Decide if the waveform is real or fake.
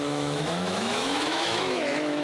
fake